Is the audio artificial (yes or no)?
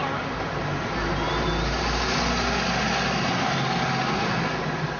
no